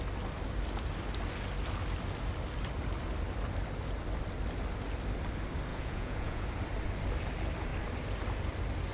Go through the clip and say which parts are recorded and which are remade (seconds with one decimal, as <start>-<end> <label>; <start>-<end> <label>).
0.0-5.7 recorded; 5.7-6.4 remade; 6.4-8.9 recorded